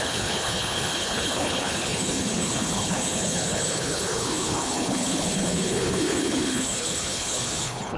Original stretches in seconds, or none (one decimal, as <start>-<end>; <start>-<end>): none